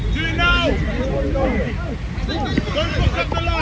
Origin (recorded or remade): recorded